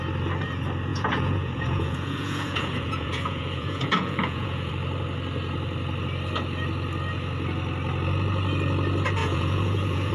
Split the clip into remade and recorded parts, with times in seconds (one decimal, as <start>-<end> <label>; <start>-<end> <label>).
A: 0.0-0.9 recorded; 0.9-4.7 remade; 4.7-9.2 recorded; 9.2-10.1 remade